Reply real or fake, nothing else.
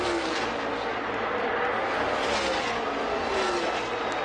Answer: real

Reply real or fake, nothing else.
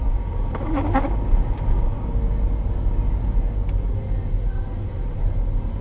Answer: real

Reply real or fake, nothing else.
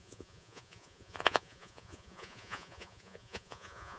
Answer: fake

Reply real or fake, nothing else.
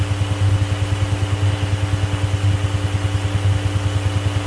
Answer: real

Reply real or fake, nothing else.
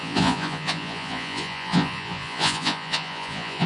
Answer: fake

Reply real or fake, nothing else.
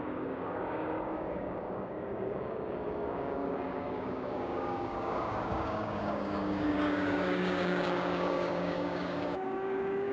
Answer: fake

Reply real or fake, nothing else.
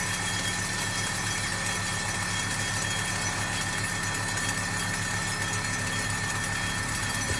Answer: real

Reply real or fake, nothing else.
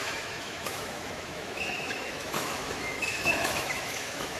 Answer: fake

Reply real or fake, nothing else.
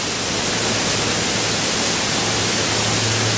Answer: real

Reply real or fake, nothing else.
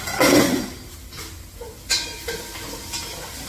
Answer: real